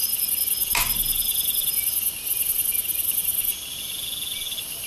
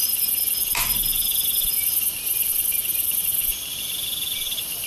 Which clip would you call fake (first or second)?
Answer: second